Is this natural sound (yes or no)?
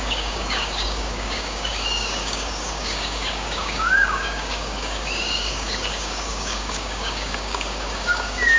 no